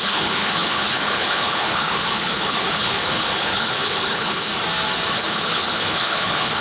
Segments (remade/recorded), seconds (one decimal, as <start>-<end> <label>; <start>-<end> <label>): 0.0-4.5 remade; 4.5-5.1 recorded; 5.1-6.6 remade